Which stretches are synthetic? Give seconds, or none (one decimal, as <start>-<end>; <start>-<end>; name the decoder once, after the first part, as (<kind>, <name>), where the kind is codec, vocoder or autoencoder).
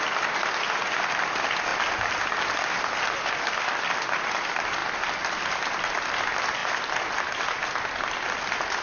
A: none